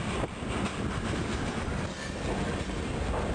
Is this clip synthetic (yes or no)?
no